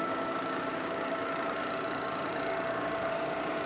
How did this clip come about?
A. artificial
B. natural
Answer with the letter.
A